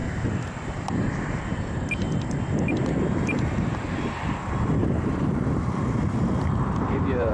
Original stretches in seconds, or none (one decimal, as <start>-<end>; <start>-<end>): 0.0-4.8